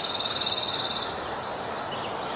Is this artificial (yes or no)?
no